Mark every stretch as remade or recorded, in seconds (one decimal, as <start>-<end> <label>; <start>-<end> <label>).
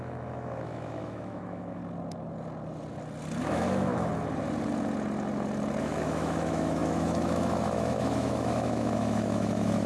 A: 0.0-1.8 remade; 1.8-3.4 recorded; 3.4-4.1 remade; 4.1-5.8 recorded; 5.8-9.9 remade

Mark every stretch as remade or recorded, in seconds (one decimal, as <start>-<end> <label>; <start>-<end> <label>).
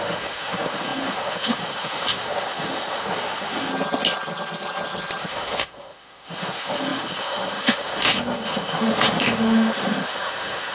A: 0.0-3.7 remade; 3.7-5.2 recorded; 5.2-10.7 remade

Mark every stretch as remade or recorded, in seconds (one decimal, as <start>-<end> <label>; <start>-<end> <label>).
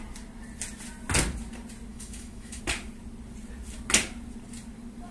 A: 0.0-1.9 recorded; 1.9-2.6 remade; 2.6-5.1 recorded